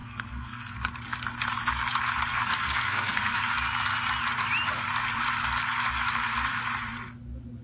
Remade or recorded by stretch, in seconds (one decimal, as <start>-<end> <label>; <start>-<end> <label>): 0.0-0.9 remade; 0.9-2.3 recorded; 2.3-3.4 remade; 3.4-7.6 recorded